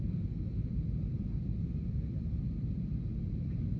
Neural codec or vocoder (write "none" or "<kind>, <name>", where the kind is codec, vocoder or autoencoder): none